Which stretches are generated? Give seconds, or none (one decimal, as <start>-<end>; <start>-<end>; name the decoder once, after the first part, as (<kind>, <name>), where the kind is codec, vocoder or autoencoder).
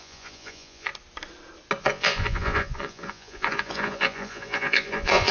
0.0-0.9 (vocoder, Vocos); 1.8-5.3